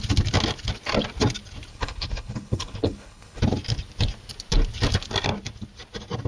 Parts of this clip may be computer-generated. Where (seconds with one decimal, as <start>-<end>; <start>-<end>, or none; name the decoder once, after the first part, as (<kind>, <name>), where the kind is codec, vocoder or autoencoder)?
1.7-3.4 (codec, HILCodec)

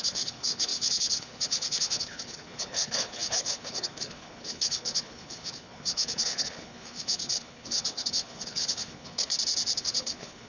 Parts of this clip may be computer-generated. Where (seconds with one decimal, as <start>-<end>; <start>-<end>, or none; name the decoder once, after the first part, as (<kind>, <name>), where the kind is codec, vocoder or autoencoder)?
0.0-9.3 (codec, HILCodec); 9.8-10.5